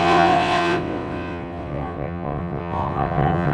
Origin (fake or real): fake